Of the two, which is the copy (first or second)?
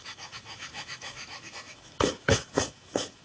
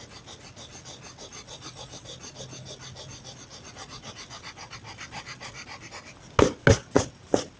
first